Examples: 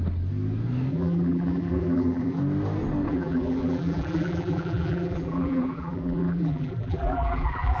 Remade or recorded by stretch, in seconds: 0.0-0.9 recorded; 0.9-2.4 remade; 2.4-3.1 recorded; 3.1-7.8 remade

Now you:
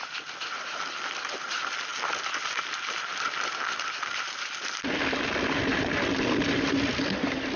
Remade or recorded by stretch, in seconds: 0.0-7.6 recorded

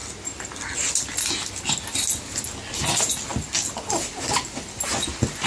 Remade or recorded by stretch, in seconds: 0.0-5.5 recorded

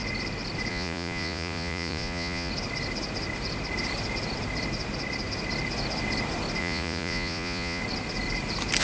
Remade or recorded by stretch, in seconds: 0.0-0.7 recorded; 0.7-2.5 remade; 2.5-6.6 recorded; 6.6-7.8 remade; 7.8-8.8 recorded

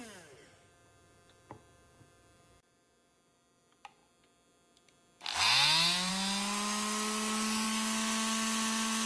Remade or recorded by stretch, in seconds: 0.0-9.1 recorded

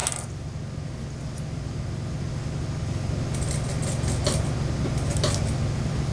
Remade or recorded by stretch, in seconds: 0.0-6.1 recorded